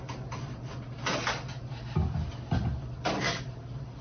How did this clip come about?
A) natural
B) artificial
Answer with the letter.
A